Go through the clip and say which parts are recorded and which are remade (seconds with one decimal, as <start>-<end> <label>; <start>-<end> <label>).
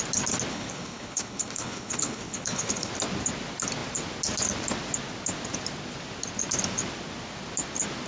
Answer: 0.0-0.5 recorded; 0.5-2.9 remade; 2.9-8.1 recorded